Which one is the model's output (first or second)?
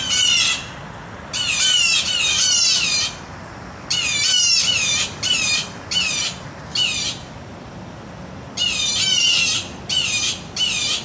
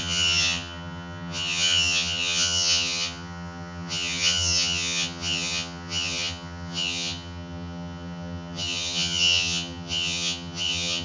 second